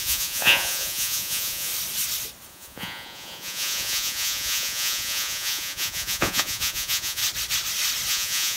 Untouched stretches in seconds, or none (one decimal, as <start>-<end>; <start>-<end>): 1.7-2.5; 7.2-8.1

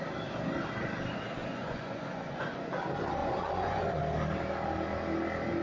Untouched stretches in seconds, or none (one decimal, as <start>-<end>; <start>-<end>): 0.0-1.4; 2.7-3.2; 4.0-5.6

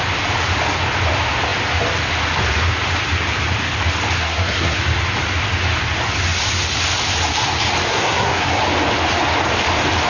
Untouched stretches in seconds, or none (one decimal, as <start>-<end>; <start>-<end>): 0.0-4.2; 4.8-7.9; 8.5-10.1